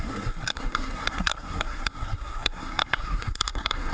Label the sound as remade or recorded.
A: remade